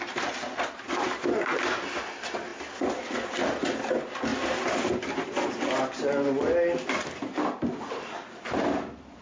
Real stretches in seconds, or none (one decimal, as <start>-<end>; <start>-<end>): 0.0-9.2